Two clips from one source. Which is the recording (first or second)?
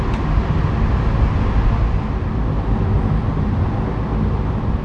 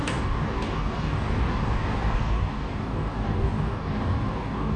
first